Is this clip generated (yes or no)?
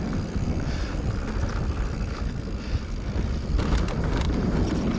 no